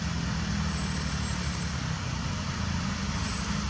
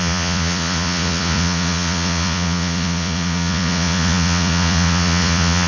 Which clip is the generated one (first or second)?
second